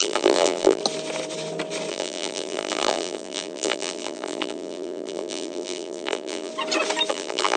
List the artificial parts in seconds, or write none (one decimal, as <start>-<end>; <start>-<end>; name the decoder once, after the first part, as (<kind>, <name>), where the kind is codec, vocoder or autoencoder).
0.0-0.8 (vocoder, BigVGAN v2); 1.9-6.5; 7.1-7.6